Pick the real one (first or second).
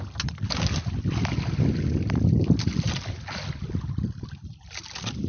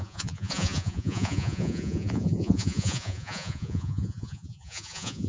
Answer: first